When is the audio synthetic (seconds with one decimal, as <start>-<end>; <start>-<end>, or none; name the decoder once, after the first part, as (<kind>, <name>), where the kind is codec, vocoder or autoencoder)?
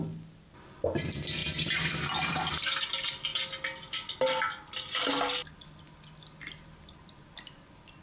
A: none